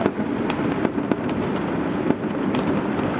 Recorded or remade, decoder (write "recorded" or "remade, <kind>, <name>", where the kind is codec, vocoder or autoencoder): remade, vocoder, BigVGAN v2